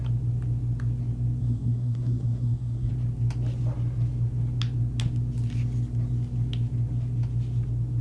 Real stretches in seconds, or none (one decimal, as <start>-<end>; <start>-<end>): 0.0-1.4; 2.9-8.0

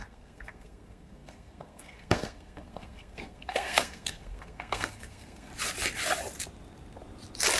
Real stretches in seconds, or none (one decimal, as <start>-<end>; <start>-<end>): 5.5-7.6